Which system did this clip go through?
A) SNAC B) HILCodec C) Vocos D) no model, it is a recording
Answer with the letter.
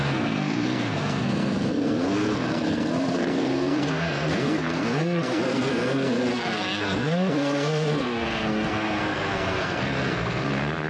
A